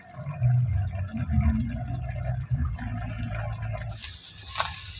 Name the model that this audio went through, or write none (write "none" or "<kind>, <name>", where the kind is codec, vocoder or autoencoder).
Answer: none